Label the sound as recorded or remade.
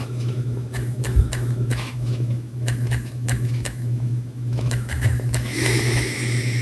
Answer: remade